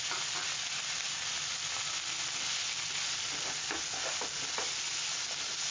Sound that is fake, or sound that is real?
real